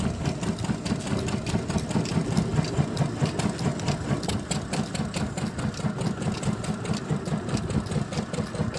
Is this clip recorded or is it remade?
recorded